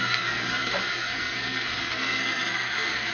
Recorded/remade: remade